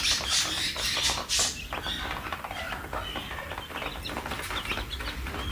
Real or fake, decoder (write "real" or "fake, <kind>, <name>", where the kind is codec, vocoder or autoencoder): real